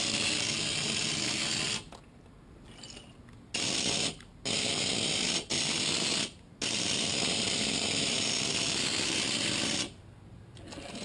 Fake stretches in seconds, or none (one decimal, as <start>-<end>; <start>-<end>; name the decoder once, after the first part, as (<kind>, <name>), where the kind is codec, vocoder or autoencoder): none